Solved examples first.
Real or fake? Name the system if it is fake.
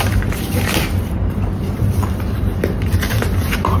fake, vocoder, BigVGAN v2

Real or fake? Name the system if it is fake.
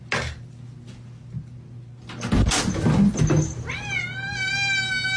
real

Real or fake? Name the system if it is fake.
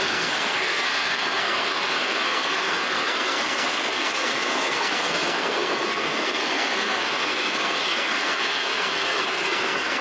fake, codec, SNAC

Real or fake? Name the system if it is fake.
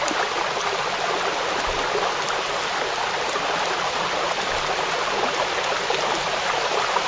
real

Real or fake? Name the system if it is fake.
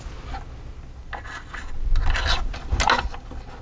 real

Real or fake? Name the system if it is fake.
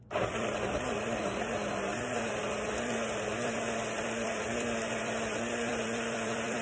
fake, vocoder, BigVGAN v2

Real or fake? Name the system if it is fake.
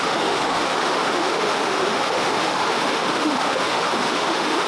fake, autoencoder, DAC-VAE